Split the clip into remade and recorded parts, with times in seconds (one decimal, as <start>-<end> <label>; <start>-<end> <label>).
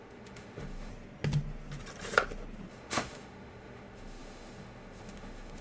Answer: 0.0-0.9 remade; 0.9-2.7 recorded; 2.7-5.6 remade